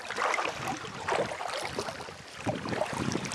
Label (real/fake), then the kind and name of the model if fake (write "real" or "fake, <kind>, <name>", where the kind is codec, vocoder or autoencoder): fake, vocoder, BigVGAN v2